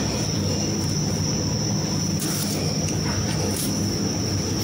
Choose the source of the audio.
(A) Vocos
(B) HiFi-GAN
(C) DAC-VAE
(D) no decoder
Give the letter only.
D